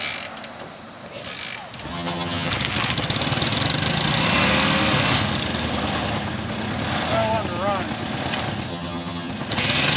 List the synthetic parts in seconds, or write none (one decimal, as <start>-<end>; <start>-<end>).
1.9-2.5; 8.7-9.3